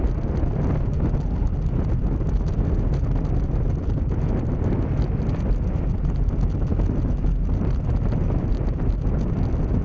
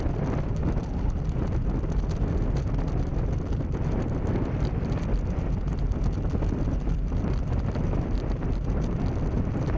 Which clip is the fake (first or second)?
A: second